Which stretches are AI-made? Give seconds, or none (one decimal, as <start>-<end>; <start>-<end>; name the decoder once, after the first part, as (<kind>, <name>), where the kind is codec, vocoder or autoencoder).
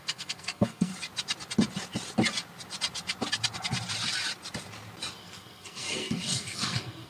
0.0-0.9 (codec, SNAC); 5.2-7.1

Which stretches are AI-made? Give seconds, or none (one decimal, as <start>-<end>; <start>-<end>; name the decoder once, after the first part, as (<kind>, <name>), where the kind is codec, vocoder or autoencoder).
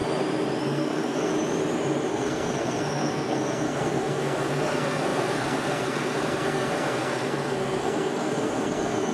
0.6-1.3 (codec, SNAC); 2.1-9.1